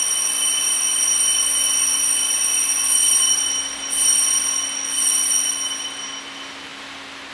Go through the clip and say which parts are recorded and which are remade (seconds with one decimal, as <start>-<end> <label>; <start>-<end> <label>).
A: 0.0-7.3 recorded